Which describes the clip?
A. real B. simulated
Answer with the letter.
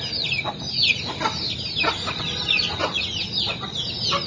A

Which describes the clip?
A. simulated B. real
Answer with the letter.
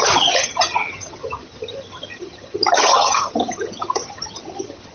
A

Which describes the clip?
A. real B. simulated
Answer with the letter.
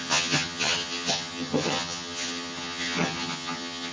B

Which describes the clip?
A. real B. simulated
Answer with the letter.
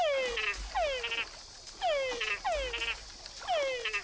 A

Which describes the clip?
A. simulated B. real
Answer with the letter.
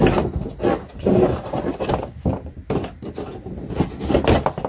B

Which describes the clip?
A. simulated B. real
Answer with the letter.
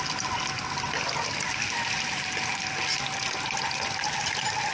B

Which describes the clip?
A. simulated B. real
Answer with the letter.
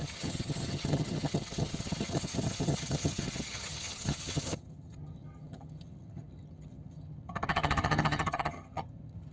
A